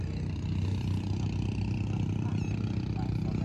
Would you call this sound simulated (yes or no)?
no